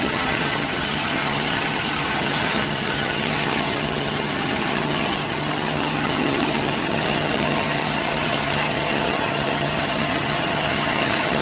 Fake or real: fake